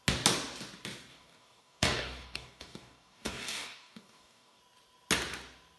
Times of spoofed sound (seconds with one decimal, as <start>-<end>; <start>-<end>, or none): 1.1-4.6